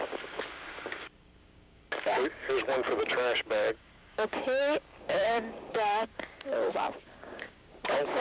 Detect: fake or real fake